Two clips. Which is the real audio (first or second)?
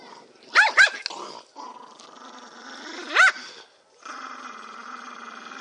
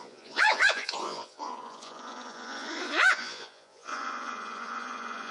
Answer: first